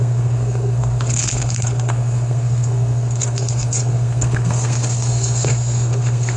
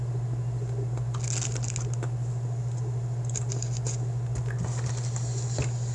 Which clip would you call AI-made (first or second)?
first